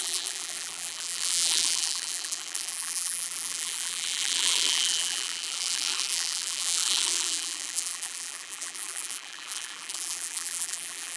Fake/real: fake